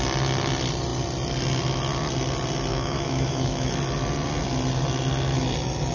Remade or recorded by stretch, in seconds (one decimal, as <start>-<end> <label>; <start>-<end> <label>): 0.0-2.7 recorded; 2.7-3.7 remade; 3.7-5.9 recorded